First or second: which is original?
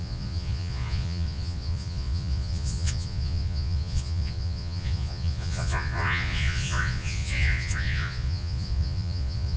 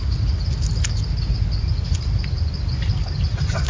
second